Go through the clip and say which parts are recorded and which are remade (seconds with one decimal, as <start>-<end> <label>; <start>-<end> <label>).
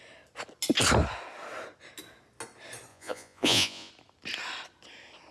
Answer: 0.0-2.9 recorded; 2.9-3.9 remade; 3.9-5.3 recorded